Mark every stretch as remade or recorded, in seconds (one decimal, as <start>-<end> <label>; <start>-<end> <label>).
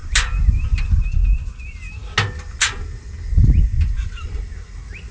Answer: 0.0-5.1 recorded